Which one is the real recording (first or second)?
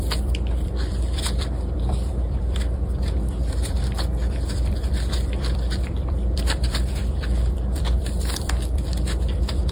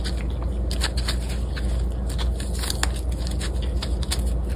second